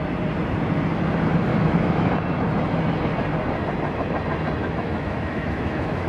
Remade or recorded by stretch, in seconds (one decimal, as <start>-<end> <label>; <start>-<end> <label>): 0.0-1.5 recorded; 1.5-2.1 remade; 2.1-4.6 recorded; 4.6-6.1 remade